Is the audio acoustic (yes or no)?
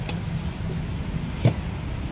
yes